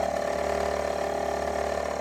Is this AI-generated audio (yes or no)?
no